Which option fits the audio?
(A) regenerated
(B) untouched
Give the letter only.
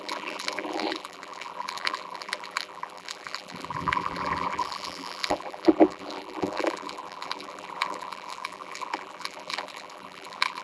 A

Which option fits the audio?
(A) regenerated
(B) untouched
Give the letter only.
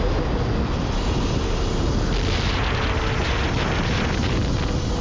B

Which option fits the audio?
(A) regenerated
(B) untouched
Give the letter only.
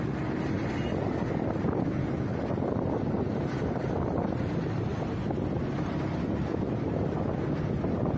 B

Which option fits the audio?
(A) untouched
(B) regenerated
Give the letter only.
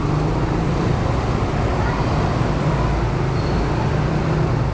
A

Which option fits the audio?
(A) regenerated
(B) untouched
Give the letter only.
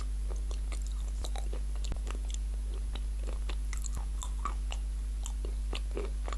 B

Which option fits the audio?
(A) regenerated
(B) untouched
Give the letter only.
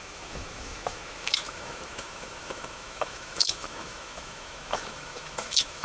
A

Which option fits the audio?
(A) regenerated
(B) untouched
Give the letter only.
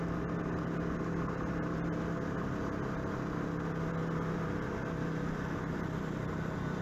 B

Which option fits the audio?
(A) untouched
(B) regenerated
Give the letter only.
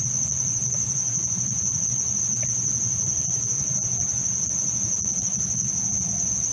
B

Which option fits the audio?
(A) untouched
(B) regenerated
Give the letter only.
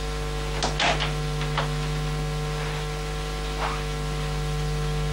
A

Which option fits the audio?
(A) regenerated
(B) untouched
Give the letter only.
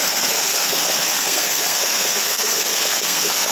A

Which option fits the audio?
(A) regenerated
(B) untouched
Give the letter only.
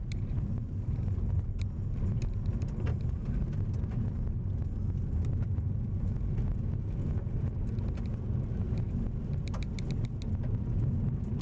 B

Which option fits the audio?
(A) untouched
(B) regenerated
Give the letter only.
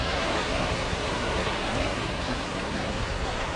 B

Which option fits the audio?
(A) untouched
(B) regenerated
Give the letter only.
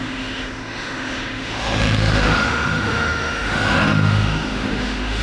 B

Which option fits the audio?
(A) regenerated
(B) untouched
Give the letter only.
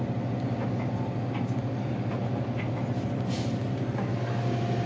B